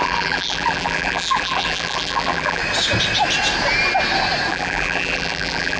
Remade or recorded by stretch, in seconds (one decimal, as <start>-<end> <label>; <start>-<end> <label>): 0.0-2.6 remade; 2.6-4.5 recorded; 4.5-5.8 remade